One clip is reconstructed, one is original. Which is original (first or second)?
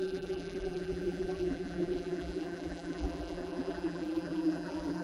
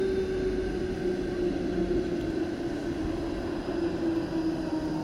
second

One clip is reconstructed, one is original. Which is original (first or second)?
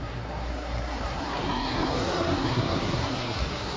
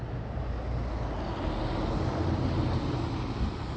second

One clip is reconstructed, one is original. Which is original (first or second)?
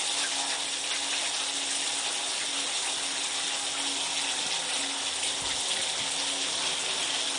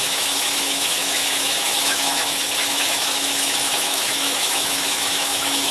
first